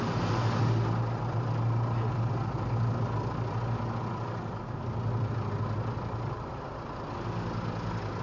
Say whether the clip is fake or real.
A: real